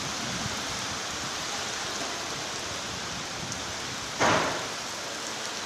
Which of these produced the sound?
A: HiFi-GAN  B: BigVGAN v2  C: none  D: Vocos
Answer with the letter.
C